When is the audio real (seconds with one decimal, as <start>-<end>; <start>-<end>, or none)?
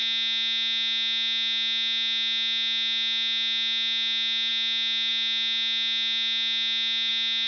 0.0-7.5